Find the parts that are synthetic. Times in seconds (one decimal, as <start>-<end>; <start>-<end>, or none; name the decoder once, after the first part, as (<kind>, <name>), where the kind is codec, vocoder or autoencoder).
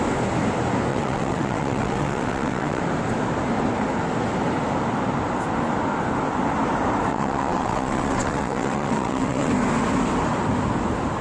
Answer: 0.9-2.8 (vocoder, WaveNeXt); 7.1-9.5